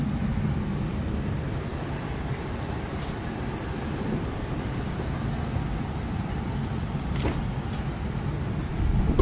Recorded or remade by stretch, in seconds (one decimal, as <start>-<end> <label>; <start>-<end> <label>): 0.0-9.2 recorded